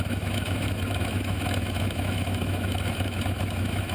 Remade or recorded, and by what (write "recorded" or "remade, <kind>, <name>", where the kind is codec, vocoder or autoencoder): remade, autoencoder, DAC-VAE